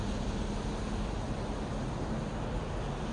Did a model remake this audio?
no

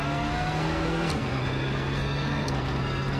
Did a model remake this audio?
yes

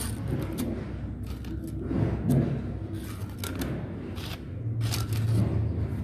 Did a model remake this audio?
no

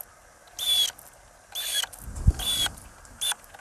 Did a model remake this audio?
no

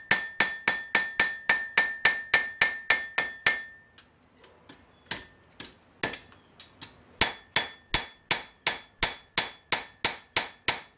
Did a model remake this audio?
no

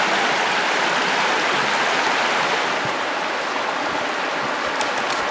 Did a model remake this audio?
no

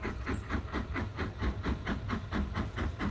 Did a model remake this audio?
no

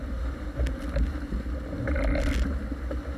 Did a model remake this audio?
no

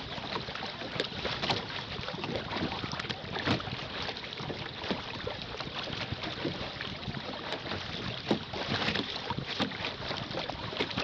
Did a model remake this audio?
yes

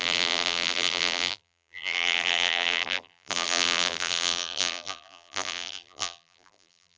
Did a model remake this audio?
yes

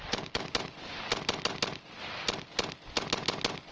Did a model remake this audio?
no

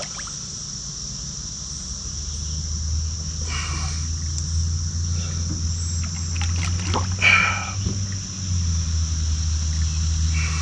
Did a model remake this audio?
no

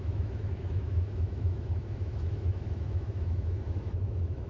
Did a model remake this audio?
yes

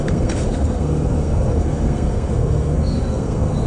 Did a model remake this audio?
yes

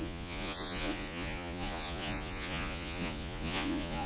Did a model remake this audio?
yes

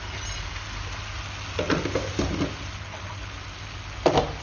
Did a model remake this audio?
no